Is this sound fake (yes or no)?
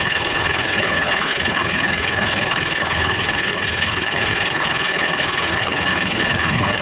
yes